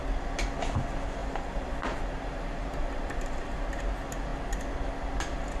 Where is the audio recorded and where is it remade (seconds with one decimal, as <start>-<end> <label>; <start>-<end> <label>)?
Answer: 0.0-1.2 recorded; 1.2-3.8 remade; 3.8-5.6 recorded